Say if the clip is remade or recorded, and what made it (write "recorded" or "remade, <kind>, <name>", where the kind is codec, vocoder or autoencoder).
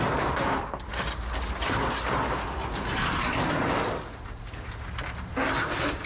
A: recorded